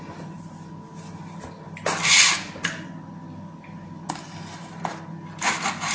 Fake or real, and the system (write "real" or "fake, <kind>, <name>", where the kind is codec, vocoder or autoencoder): real